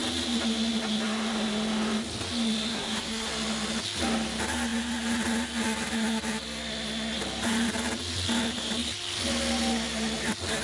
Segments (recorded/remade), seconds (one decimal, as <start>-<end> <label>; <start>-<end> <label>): 0.0-2.7 recorded; 2.7-3.3 remade; 3.3-10.6 recorded